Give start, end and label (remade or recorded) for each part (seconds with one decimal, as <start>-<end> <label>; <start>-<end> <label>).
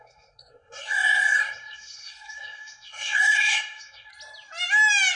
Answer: 0.0-4.1 remade; 4.1-5.2 recorded